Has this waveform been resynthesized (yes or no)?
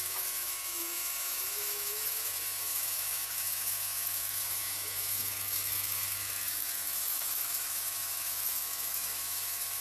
yes